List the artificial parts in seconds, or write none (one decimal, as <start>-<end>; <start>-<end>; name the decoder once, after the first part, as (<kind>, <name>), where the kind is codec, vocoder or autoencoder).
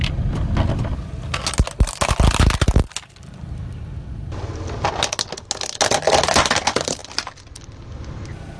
none